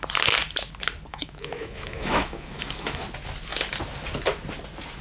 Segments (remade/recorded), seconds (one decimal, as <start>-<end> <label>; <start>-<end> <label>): 0.0-1.1 recorded; 1.1-3.0 remade; 3.0-5.0 recorded